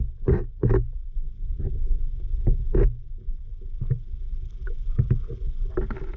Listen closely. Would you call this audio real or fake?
real